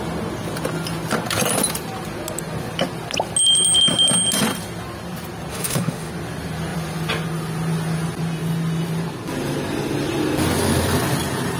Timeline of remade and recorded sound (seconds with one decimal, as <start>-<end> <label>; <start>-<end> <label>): 0.0-5.5 recorded; 5.5-6.1 remade; 6.1-11.6 recorded